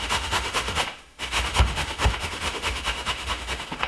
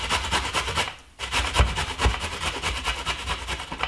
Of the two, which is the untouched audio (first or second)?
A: second